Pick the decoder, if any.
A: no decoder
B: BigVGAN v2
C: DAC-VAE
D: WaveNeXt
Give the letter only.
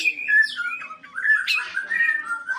A